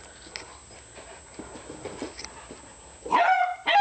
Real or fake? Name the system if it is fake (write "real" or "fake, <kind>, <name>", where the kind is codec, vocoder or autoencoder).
real